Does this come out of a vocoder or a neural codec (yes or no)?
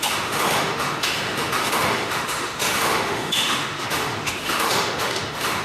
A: yes